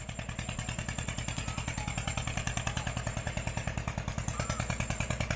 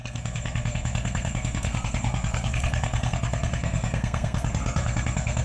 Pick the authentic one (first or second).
first